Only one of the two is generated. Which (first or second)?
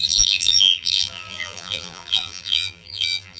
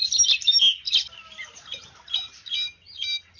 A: first